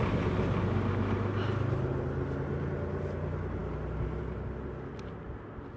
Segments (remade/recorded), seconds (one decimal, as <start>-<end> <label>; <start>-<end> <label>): 0.0-5.8 recorded